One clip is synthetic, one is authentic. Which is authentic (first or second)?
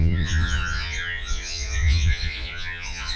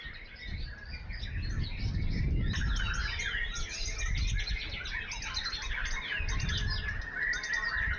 second